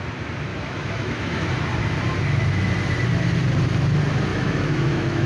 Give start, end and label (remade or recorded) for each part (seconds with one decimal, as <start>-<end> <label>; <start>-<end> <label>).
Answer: 0.0-0.5 recorded; 0.5-1.5 remade; 1.5-4.3 recorded; 4.3-5.3 remade